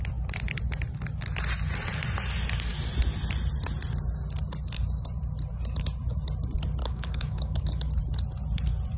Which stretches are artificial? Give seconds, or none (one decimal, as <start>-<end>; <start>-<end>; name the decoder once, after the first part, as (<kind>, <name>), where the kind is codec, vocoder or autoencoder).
6.8-7.7 (codec, DAC)